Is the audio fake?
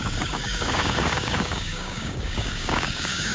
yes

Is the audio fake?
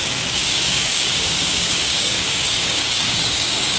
yes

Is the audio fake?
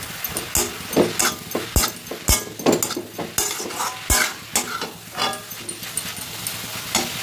no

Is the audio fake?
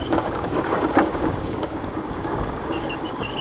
yes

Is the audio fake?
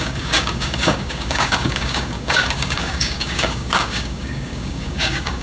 yes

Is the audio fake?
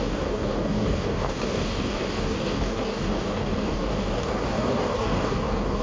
yes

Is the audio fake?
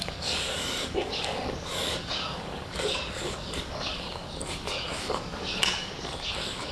yes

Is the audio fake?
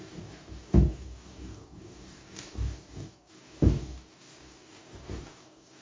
yes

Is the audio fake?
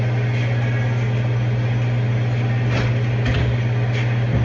no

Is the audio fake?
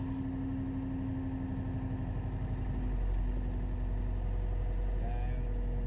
no